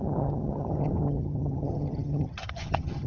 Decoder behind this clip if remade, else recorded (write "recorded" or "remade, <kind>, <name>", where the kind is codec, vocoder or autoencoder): remade, vocoder, HiFi-GAN